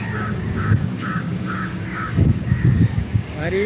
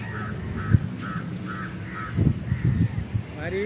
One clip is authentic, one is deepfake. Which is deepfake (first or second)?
first